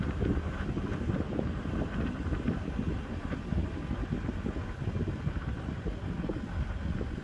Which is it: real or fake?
real